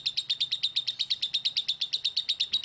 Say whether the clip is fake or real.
real